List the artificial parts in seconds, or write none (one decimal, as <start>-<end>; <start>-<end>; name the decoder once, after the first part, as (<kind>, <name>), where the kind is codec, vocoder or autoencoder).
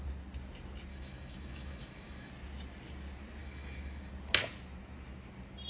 0.9-2.3 (autoencoder, DAC-VAE); 3.4-4.1